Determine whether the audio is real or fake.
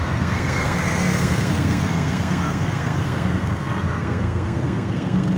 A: fake